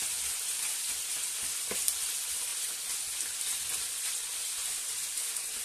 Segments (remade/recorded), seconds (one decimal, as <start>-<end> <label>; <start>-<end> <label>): 0.0-5.6 recorded